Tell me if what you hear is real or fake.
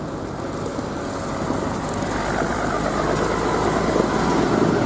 real